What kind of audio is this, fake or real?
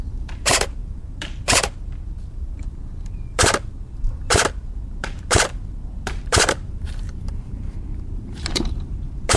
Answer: fake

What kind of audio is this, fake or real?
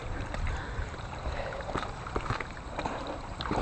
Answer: fake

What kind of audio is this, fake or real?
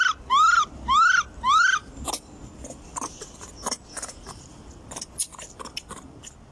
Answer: real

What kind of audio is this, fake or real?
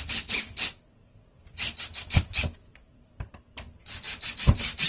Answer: fake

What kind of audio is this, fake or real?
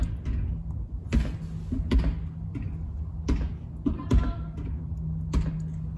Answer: real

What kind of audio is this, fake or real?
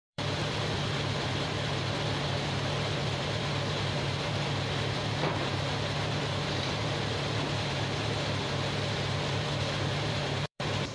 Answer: fake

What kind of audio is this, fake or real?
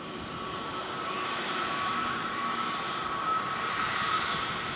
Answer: fake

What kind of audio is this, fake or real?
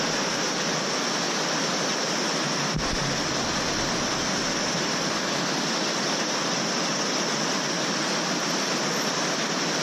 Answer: real